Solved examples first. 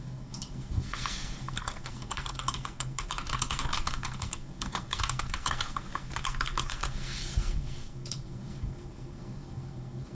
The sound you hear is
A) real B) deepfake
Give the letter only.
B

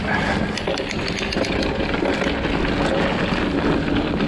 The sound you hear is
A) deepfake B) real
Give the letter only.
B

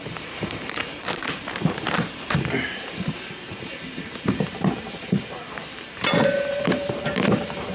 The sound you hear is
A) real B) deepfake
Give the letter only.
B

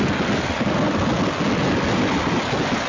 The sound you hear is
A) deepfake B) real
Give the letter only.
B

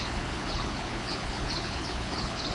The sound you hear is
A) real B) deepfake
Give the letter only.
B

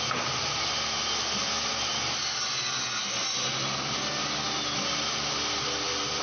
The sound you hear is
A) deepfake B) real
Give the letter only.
B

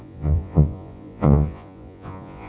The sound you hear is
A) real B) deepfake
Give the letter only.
B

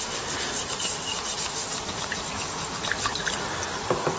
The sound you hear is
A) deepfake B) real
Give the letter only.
A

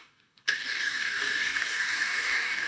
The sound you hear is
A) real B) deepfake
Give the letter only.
B